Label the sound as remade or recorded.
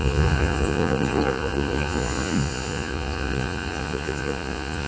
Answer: remade